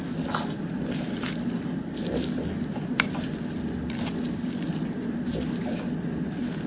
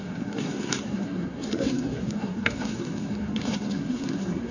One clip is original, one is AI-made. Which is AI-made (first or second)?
second